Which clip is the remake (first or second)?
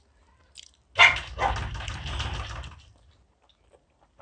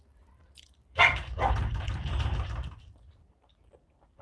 second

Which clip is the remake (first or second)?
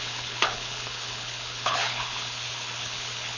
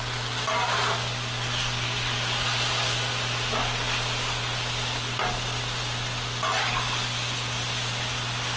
first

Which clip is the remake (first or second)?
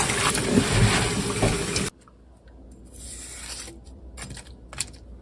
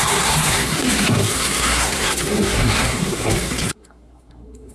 second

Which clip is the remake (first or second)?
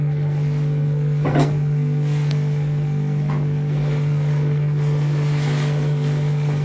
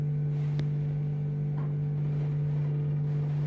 first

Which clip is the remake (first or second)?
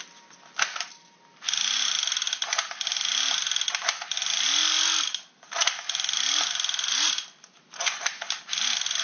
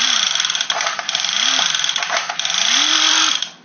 second